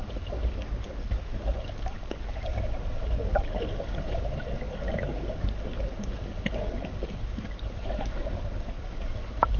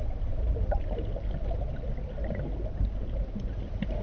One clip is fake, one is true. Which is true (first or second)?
second